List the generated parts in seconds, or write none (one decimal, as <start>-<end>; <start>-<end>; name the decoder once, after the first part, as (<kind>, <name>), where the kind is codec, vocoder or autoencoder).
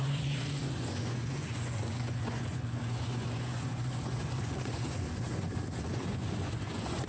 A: 0.0-7.1 (vocoder, Vocos)